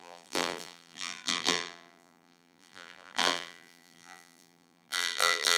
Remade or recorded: remade